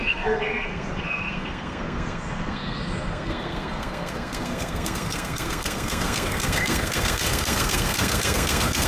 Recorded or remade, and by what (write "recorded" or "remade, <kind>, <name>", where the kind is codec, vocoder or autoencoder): remade, codec, SNAC